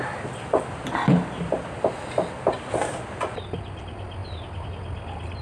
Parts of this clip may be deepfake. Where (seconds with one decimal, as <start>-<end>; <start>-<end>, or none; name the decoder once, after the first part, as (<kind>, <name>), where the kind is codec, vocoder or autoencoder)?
none